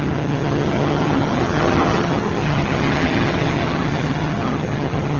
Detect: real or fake fake